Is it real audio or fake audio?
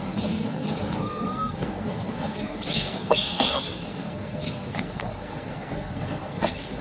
fake